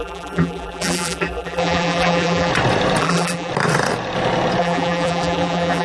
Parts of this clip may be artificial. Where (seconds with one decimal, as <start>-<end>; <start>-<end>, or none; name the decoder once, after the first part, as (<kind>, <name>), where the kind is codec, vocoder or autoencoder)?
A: 0.0-2.5 (vocoder, BigVGAN v2); 3.0-3.5; 4.6-5.8